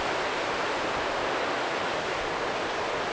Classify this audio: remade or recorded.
recorded